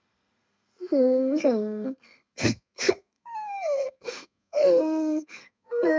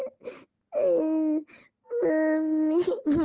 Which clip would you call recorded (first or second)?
second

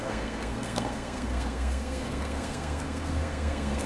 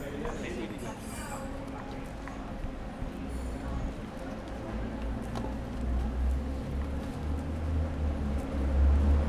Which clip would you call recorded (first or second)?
second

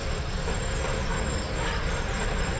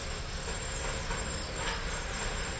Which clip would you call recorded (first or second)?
second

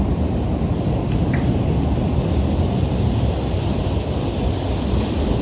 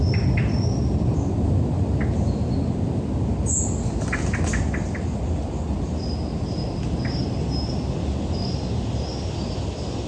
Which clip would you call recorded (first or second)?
second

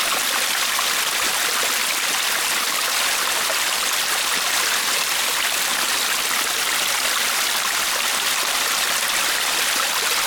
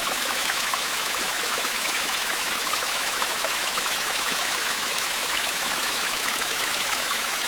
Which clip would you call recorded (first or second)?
first